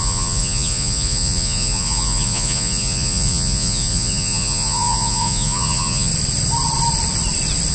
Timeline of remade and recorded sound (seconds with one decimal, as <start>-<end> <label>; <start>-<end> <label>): 0.0-6.1 remade; 6.1-7.7 recorded